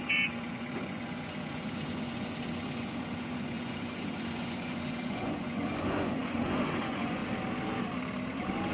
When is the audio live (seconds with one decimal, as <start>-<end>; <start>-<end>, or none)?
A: 7.2-8.7